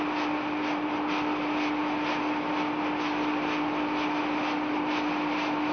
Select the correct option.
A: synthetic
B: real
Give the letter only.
B